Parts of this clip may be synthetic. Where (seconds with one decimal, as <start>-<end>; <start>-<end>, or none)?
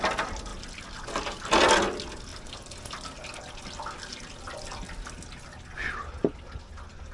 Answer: none